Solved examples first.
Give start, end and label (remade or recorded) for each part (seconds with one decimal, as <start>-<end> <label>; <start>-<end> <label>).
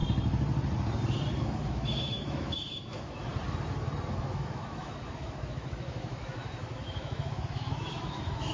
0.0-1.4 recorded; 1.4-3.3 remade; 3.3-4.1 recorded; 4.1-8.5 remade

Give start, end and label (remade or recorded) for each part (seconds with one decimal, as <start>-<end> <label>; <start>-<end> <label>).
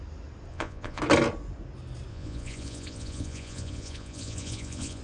0.0-0.5 recorded; 0.5-1.0 remade; 1.0-2.1 recorded; 2.1-5.0 remade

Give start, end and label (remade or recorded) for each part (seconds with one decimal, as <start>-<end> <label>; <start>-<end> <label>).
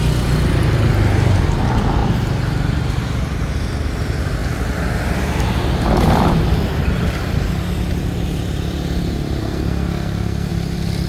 0.0-9.4 recorded; 9.4-10.5 remade; 10.5-11.1 recorded